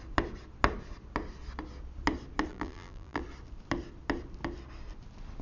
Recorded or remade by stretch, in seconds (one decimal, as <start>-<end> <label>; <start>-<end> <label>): 0.0-2.5 recorded; 2.5-3.2 remade; 3.2-5.4 recorded